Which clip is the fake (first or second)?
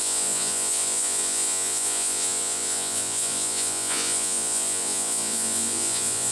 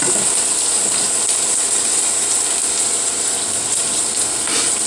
first